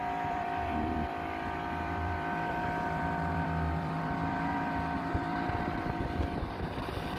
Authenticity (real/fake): fake